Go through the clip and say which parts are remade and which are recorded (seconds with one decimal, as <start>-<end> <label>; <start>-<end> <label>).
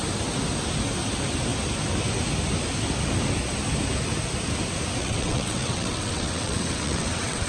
0.0-5.0 recorded; 5.0-7.5 remade